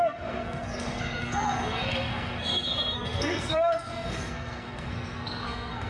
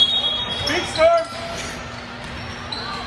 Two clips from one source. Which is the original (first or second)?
second